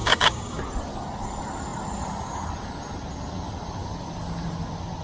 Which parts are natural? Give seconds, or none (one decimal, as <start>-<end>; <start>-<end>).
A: 0.6-5.0